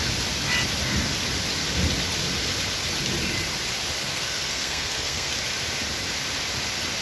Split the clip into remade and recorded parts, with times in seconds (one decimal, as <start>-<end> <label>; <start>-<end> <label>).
0.0-4.0 recorded; 4.0-5.3 remade; 5.3-7.0 recorded